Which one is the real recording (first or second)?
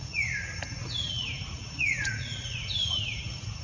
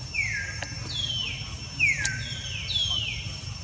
second